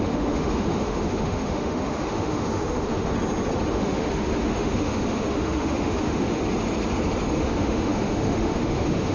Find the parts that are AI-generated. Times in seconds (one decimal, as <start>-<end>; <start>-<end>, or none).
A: 0.0-3.1; 3.7-6.4; 7.3-9.1